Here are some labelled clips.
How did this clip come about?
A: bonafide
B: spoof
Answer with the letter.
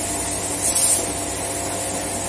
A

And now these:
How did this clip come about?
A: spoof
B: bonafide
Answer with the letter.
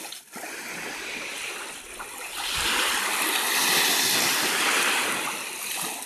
B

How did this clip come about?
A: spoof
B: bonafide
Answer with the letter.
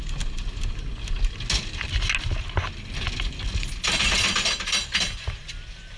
B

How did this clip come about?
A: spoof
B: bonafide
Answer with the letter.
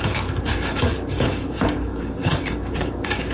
A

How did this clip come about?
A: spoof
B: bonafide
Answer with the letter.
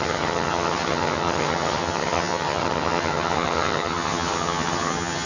A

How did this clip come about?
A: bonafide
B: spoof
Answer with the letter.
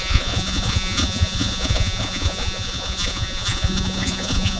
B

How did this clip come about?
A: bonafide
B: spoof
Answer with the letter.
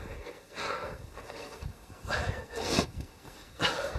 B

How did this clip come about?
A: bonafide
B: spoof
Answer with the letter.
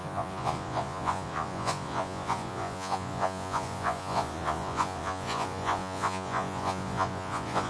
B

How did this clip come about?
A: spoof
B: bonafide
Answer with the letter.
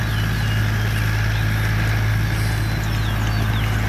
B